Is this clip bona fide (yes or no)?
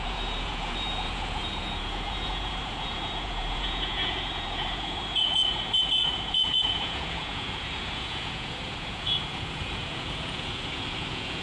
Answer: no